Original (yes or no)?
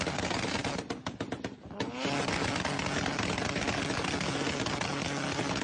yes